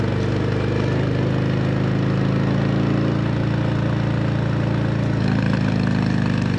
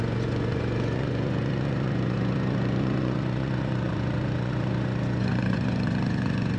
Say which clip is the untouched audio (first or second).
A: first